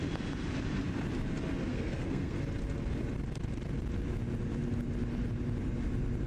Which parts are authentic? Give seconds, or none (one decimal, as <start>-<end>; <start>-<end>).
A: 0.0-1.7; 2.4-6.3